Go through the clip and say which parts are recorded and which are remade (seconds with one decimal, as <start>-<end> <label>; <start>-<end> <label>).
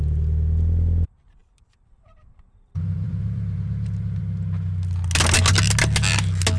0.0-1.4 recorded; 1.4-4.2 remade; 4.2-6.6 recorded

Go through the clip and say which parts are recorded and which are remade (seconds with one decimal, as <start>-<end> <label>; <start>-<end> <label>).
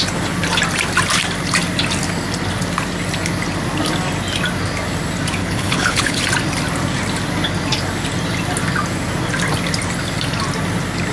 0.0-5.4 recorded; 5.4-6.2 remade; 6.2-11.1 recorded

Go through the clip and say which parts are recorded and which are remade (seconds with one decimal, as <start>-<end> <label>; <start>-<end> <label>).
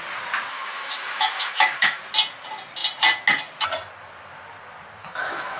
0.0-0.5 recorded; 0.5-2.0 remade; 2.0-5.0 recorded; 5.0-5.6 remade